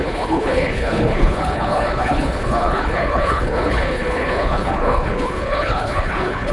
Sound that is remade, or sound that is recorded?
remade